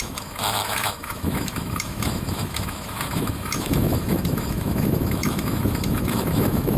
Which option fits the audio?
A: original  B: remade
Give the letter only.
B